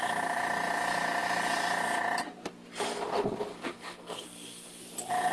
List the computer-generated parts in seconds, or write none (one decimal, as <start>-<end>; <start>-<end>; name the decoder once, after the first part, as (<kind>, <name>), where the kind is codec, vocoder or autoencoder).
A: 3.5-4.8 (codec, SNAC)